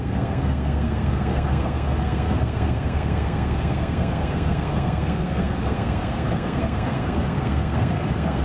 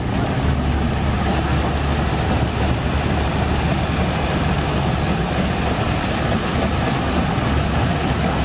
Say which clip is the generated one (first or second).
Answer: first